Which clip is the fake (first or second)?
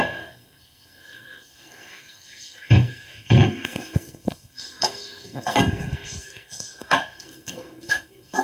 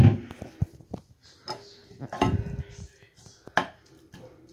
first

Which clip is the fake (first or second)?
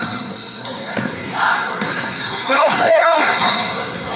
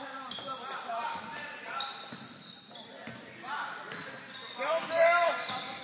first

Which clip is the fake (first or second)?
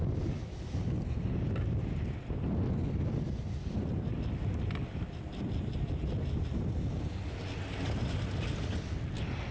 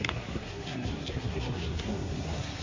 second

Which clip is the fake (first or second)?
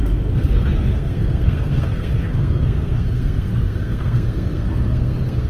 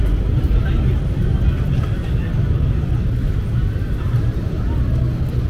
first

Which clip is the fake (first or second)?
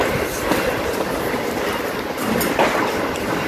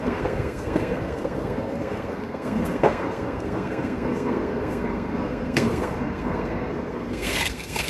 second